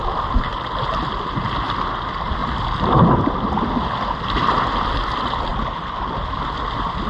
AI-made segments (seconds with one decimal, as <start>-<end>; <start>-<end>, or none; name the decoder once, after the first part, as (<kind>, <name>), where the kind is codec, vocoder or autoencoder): none